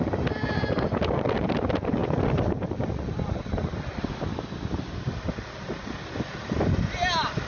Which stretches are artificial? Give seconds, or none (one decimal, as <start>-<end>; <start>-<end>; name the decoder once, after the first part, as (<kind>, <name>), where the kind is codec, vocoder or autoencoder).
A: none